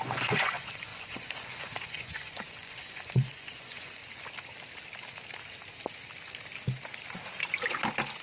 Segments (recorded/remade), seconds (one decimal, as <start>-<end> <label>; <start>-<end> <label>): 0.0-4.0 remade; 4.0-8.2 recorded